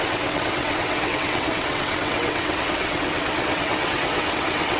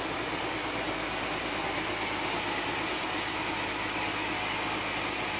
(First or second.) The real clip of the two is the second